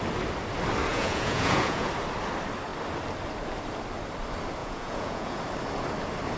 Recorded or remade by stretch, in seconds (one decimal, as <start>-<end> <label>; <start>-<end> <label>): 0.0-0.9 recorded; 0.9-1.9 remade; 1.9-4.6 recorded; 4.6-5.4 remade; 5.4-6.4 recorded